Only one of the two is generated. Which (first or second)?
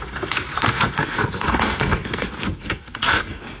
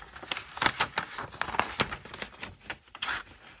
first